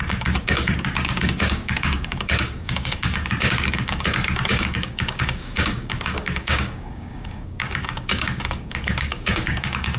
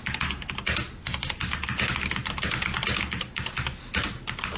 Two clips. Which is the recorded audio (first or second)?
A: second